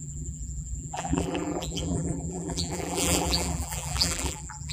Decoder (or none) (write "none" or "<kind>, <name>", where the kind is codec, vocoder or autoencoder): vocoder, BigVGAN v2